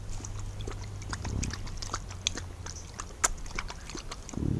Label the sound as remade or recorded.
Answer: recorded